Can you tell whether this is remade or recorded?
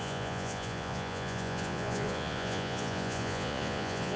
remade